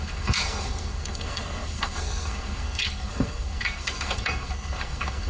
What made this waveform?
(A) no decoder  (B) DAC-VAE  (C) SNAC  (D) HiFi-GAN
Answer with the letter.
C